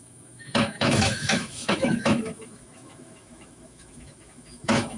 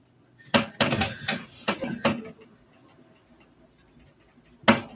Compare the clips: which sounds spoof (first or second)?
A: first